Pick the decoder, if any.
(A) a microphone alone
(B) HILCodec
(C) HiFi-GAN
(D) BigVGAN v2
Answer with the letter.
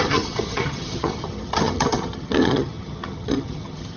C